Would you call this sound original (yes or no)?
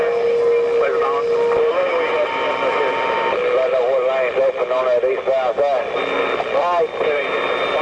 yes